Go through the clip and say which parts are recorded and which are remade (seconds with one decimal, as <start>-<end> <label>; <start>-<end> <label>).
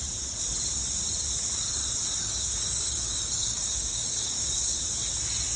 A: 0.0-2.2 recorded; 2.2-4.8 remade; 4.8-5.6 recorded